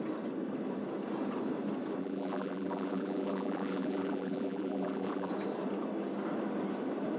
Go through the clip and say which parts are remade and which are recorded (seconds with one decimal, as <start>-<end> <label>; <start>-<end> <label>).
0.0-2.0 recorded; 2.0-5.3 remade; 5.3-7.2 recorded